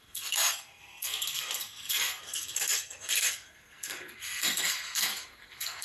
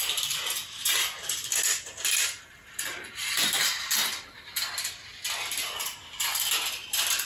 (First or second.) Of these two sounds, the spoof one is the first